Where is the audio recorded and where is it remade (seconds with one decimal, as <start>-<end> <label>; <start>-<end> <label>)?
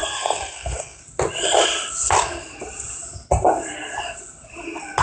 0.0-1.0 remade; 1.0-5.0 recorded